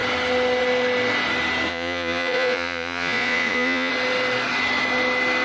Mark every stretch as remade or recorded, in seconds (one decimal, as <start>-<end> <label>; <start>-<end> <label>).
0.0-1.7 recorded; 1.7-3.9 remade; 3.9-5.4 recorded